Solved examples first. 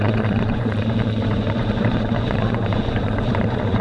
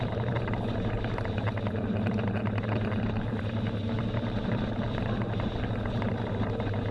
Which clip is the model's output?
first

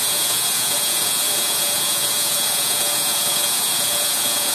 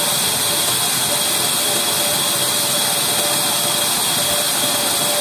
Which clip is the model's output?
first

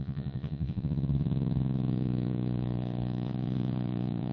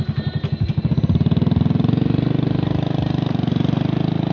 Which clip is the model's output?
first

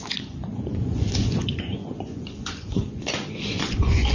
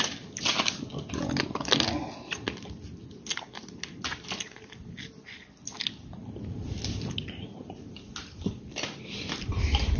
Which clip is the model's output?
first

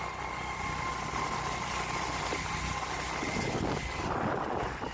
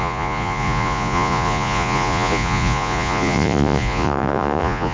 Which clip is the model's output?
second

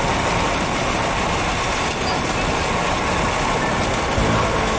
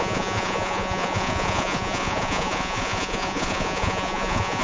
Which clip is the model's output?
second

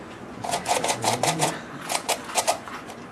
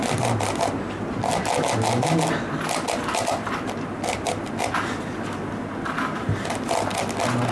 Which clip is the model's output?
first